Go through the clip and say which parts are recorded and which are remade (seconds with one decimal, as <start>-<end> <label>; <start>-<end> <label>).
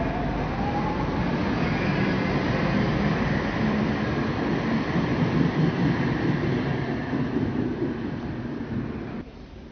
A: 0.0-9.7 recorded